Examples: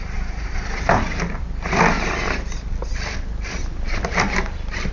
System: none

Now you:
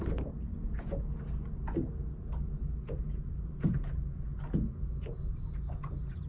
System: vocoder, Vocos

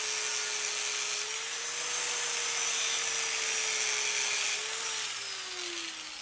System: none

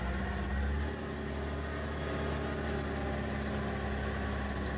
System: none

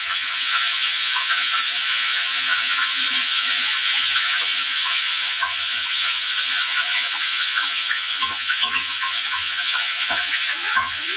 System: vocoder, Vocos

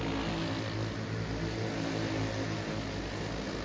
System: none